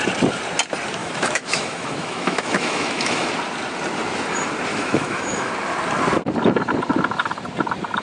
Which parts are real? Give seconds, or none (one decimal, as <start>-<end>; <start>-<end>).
0.0-1.0; 3.3-4.7; 5.5-8.0